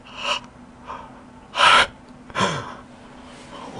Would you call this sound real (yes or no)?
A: yes